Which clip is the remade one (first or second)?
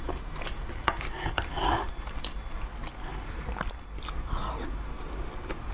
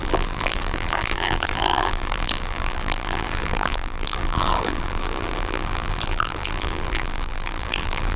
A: second